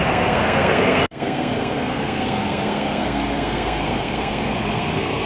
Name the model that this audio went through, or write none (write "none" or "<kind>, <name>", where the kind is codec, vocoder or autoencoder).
codec, SNAC